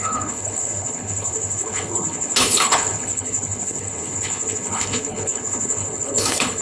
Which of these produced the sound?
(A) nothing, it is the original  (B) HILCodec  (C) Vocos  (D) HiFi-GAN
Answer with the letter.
B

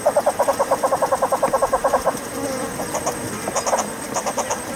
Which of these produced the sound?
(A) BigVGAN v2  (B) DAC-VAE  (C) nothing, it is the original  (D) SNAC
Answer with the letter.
C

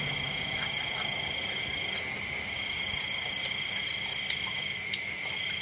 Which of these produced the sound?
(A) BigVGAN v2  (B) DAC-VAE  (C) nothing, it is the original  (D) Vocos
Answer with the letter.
C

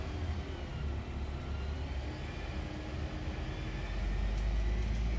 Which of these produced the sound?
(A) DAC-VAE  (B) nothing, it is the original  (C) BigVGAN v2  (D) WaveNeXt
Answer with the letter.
B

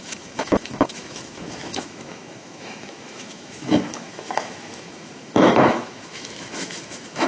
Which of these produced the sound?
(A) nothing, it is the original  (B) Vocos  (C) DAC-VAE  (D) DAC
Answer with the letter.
C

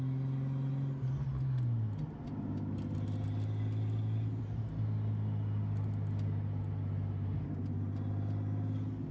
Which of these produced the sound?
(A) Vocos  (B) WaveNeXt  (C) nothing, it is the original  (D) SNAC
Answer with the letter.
C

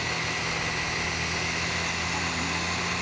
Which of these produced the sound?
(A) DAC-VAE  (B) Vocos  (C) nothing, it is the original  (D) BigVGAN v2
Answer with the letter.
C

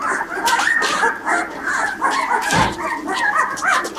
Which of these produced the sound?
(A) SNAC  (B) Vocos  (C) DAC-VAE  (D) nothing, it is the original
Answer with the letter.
D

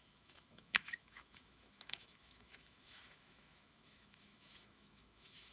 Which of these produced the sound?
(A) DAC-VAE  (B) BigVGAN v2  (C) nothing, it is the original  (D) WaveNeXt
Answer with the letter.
A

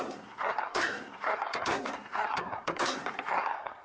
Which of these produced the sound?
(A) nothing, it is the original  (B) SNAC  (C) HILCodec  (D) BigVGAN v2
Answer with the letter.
B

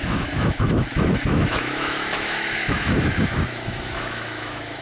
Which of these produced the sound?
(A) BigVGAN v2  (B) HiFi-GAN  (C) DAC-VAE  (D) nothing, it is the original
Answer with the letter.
C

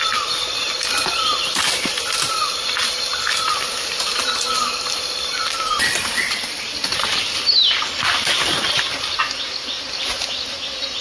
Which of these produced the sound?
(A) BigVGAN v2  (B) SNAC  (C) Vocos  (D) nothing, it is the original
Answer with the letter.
D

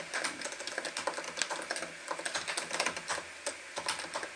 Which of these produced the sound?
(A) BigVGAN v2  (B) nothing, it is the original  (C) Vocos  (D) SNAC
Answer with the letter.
B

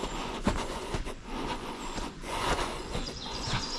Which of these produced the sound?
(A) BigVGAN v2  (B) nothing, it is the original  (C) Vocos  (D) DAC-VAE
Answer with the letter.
C